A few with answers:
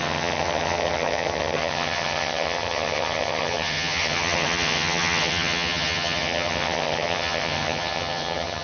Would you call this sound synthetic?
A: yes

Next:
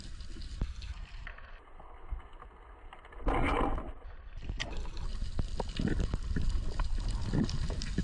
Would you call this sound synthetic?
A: no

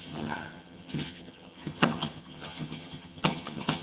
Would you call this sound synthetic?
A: yes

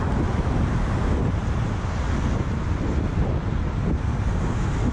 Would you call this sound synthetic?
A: no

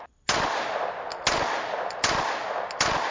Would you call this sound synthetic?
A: no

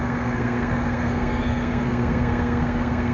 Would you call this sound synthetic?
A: yes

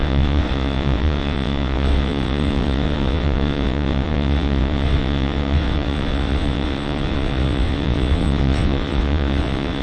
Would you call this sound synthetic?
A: yes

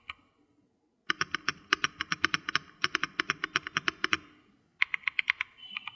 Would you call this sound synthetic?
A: no